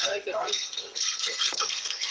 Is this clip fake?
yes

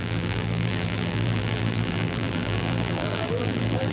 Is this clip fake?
yes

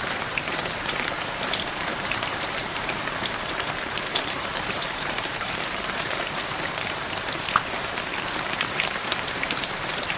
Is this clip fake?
yes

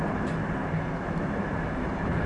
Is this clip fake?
yes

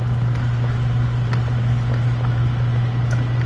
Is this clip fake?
no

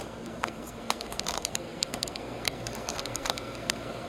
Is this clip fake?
yes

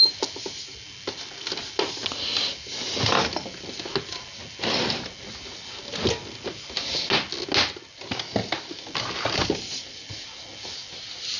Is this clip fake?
no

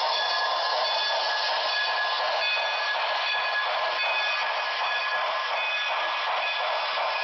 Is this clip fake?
no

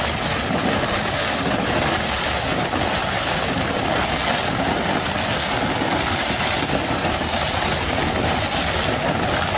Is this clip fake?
no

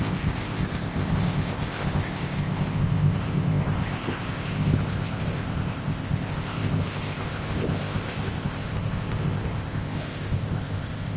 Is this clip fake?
yes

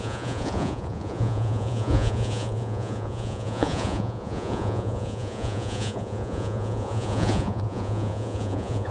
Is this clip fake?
yes